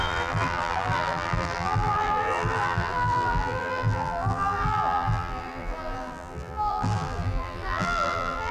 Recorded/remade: remade